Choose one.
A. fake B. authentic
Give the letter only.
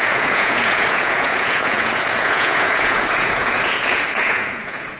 A